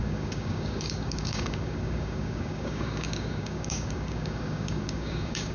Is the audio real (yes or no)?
no